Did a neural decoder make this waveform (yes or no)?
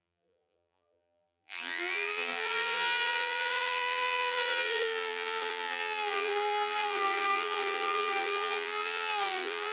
yes